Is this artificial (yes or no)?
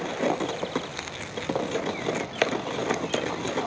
no